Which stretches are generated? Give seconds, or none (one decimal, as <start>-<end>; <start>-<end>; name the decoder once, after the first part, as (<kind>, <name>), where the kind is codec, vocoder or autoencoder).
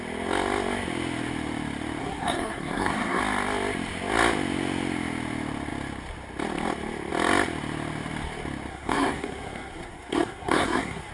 2.0-3.2 (codec, SNAC); 8.7-11.1